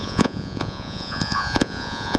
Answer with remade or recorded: remade